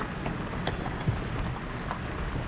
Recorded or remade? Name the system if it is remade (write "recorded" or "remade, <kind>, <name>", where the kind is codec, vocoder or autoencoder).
recorded